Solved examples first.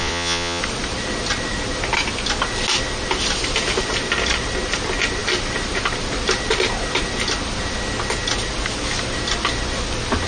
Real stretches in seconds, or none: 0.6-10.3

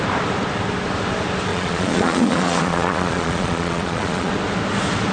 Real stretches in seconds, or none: 0.0-1.5; 4.3-5.1

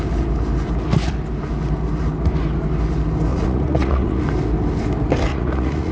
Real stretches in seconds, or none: 0.0-3.3; 4.2-5.3

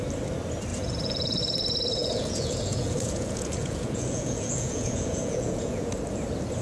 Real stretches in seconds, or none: 0.0-0.7; 1.4-2.0; 6.0-6.6